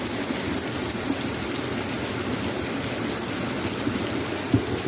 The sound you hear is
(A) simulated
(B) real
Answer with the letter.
B